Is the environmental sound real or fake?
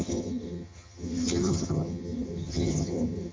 fake